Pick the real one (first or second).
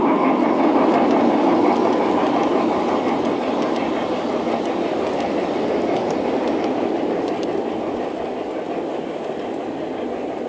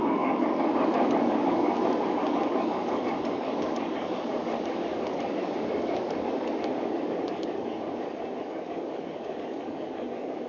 first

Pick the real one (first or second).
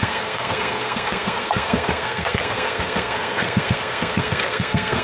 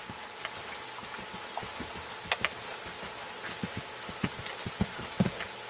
second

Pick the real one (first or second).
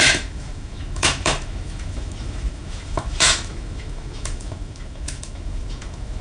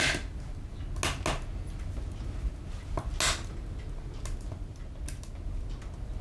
second